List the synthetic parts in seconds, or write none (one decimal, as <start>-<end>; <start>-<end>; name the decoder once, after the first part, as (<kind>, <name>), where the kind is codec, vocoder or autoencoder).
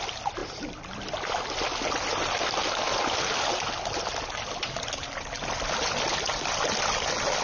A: none